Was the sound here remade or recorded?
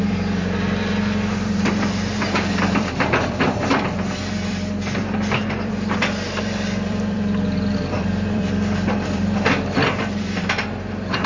remade